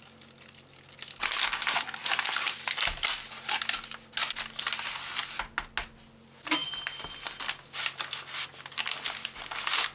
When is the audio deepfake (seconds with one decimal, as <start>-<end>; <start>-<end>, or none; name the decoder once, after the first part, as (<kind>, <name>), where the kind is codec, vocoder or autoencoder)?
none